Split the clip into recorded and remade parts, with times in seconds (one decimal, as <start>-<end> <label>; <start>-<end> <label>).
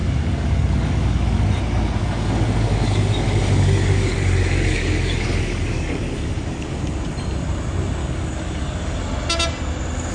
0.0-1.6 remade; 1.6-2.0 recorded; 2.0-6.8 remade; 6.8-8.0 recorded; 8.0-9.0 remade; 9.0-10.1 recorded